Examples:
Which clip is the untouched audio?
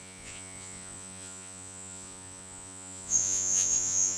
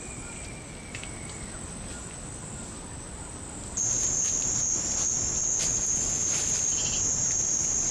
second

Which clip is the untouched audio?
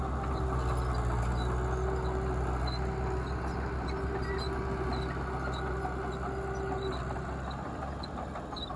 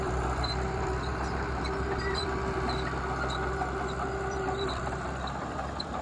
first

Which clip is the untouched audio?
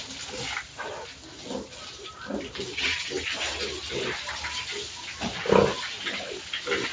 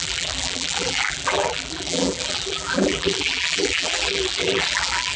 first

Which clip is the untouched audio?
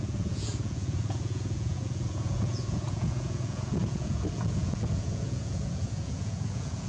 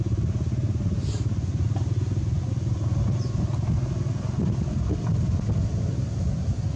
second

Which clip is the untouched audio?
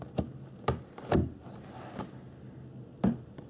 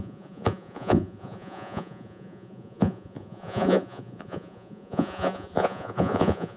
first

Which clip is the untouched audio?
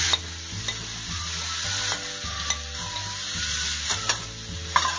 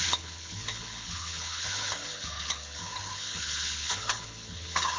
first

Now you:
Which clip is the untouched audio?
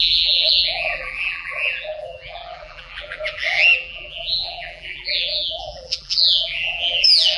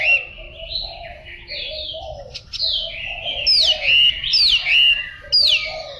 second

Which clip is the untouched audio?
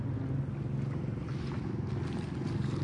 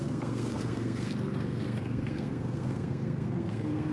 first